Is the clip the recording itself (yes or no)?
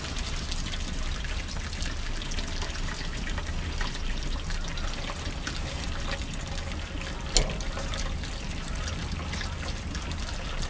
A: yes